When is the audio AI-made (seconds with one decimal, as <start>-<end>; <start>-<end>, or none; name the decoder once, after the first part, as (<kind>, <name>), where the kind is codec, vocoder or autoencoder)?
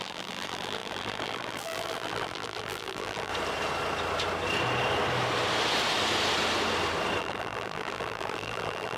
0.0-3.3 (vocoder, BigVGAN v2); 7.2-9.0